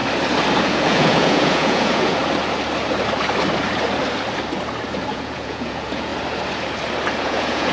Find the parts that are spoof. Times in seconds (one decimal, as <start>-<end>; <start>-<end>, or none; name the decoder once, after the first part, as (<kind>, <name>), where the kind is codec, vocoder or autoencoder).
0.6-2.2 (vocoder, Vocos); 5.1-6.1; 7.2-7.7